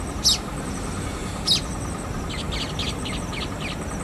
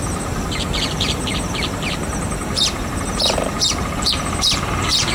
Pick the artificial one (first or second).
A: second